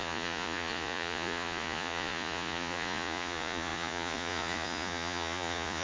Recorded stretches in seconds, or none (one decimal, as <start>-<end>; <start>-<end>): none